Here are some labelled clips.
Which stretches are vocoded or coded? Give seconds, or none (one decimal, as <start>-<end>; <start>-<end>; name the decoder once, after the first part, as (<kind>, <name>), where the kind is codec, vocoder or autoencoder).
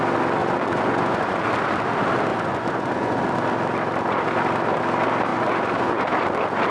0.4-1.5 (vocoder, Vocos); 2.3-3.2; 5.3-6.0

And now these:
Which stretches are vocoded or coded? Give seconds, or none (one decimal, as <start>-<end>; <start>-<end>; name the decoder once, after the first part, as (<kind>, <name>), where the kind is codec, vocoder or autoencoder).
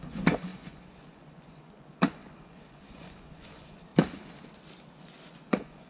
0.0-3.9 (vocoder, Vocos); 4.9-5.9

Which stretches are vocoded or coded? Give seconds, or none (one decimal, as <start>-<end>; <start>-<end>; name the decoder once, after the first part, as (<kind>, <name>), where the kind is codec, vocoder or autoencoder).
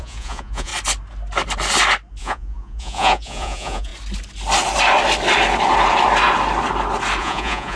0.0-0.7 (vocoder, Vocos); 2.2-3.9; 7.2-7.8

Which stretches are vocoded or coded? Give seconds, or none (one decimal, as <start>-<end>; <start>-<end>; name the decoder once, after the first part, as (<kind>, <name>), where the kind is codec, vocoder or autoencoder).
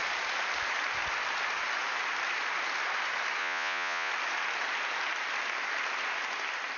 3.4-4.1 (vocoder, Vocos)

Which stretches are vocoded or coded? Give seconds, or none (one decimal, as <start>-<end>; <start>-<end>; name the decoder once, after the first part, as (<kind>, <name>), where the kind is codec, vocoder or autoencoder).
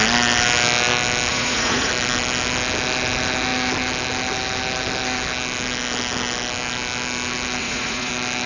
1.3-1.9 (vocoder, Vocos); 7.6-8.1